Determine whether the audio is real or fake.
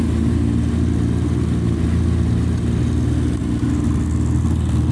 real